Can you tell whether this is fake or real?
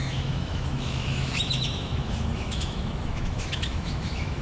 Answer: fake